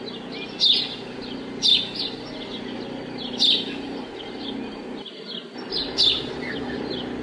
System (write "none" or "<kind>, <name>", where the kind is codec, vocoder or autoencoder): none